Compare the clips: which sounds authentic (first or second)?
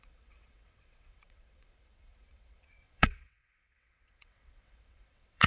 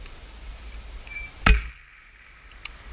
second